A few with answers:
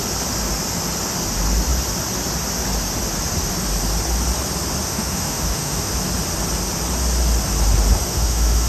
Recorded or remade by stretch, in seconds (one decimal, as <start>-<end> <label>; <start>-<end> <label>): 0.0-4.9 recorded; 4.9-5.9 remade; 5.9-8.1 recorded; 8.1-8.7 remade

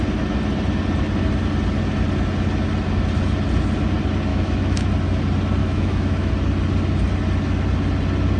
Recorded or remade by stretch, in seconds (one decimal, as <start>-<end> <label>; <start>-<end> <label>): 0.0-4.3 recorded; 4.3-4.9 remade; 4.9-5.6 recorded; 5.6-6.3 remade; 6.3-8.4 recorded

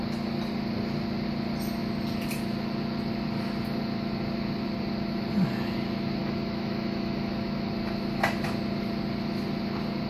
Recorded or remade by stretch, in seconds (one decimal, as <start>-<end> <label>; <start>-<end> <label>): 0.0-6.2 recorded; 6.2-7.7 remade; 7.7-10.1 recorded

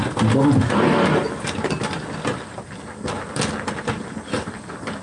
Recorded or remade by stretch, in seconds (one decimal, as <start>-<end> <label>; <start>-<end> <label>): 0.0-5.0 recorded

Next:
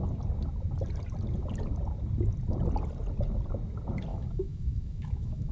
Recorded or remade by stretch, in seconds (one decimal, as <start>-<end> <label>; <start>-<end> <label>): 0.0-4.1 recorded; 4.1-5.5 remade

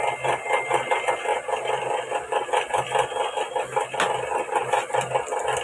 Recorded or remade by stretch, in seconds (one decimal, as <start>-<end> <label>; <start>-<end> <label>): 0.0-5.6 recorded

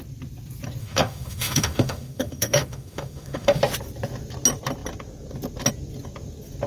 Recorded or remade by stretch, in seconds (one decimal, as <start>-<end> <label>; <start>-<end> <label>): 0.0-0.8 recorded; 0.8-3.6 remade; 3.6-6.7 recorded

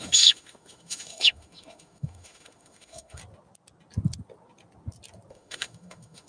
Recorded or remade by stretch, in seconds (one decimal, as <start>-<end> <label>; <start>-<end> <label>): 0.0-3.2 remade; 3.2-5.3 recorded; 5.3-6.3 remade